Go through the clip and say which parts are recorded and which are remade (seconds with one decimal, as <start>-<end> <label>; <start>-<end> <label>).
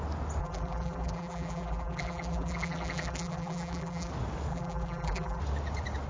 0.0-0.4 recorded; 0.4-4.1 remade; 4.1-4.5 recorded; 4.5-5.4 remade; 5.4-6.1 recorded